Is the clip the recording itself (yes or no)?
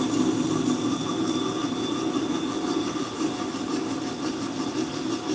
yes